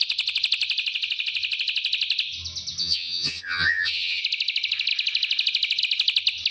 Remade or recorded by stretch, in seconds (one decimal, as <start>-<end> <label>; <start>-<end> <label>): 0.0-2.8 recorded; 2.8-4.2 remade; 4.2-6.5 recorded